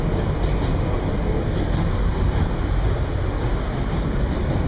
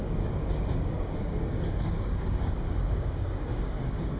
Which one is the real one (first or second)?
first